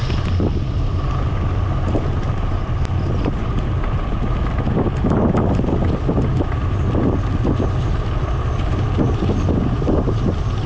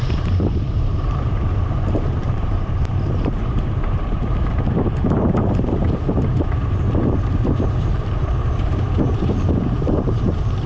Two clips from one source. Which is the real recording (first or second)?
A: first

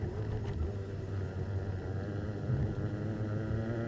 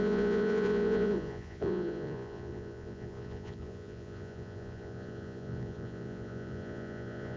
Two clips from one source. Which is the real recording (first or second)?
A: first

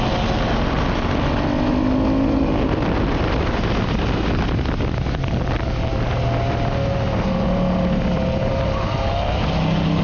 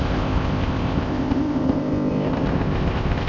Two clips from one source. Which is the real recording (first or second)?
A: first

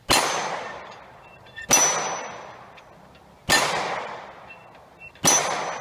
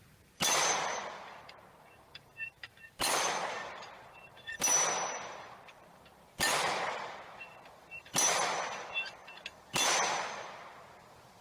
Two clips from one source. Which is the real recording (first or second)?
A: first